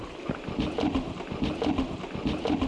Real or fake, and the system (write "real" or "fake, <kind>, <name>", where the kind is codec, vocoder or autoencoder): real